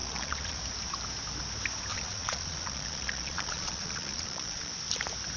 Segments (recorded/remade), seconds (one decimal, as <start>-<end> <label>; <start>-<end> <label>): 0.0-0.6 remade; 0.6-1.9 recorded; 1.9-4.7 remade; 4.7-5.4 recorded